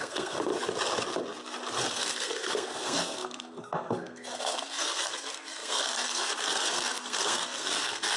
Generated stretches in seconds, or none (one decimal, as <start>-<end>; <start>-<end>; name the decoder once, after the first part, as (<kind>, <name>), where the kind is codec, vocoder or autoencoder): 0.0-0.5 (codec, SNAC); 1.9-8.2